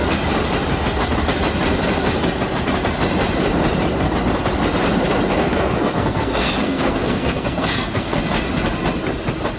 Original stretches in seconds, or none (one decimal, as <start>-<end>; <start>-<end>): 0.0-5.4; 8.2-9.6